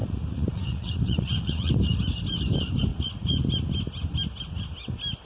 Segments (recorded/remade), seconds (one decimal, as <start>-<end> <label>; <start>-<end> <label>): 0.0-1.7 remade; 1.7-2.9 recorded; 2.9-3.5 remade; 3.5-5.3 recorded